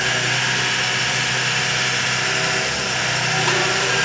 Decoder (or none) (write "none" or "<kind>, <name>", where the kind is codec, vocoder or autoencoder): none